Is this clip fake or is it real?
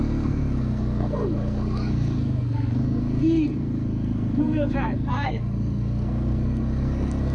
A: fake